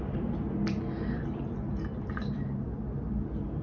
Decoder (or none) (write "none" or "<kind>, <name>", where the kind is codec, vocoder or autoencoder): none